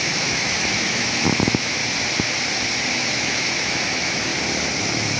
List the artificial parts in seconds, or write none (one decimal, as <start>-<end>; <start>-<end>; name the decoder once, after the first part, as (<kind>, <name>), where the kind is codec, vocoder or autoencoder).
0.0-1.8 (autoencoder, DAC-VAE); 2.9-4.3; 4.8-5.2